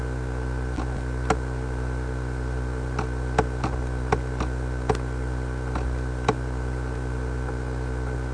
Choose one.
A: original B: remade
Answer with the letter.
A